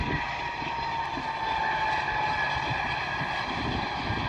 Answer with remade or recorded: recorded